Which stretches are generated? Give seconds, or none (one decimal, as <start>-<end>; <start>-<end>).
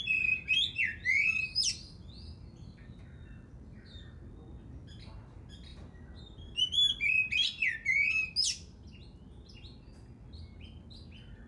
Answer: 0.9-3.5